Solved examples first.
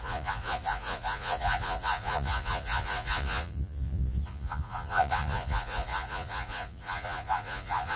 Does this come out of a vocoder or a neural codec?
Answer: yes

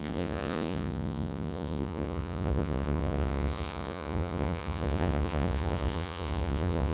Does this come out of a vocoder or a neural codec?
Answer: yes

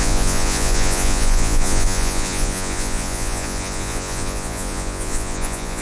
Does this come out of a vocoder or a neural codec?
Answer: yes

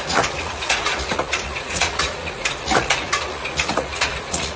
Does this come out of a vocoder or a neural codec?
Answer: yes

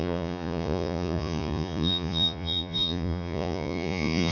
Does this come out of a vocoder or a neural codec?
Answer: yes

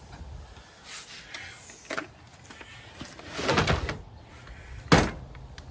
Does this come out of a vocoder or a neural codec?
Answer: no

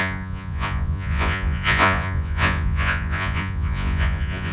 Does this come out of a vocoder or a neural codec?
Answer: yes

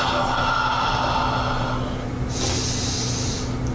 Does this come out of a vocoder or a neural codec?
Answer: no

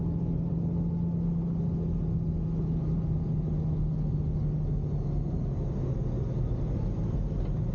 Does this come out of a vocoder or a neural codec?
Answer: no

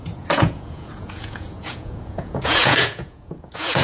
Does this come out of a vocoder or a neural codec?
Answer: yes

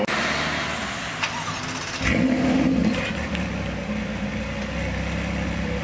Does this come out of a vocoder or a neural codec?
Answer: no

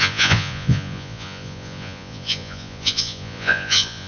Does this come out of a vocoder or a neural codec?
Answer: yes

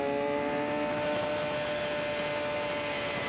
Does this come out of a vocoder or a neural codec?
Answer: no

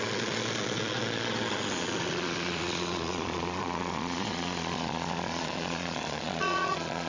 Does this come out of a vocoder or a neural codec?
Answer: yes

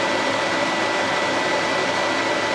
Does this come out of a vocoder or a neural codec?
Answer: no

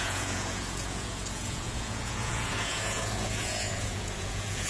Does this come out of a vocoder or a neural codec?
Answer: yes